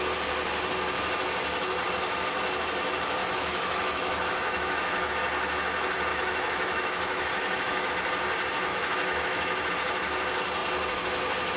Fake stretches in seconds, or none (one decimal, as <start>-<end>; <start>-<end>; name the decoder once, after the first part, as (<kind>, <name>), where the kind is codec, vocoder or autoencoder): 3.2-5.1 (autoencoder, DAC-VAE); 6.1-7.9; 8.7-9.7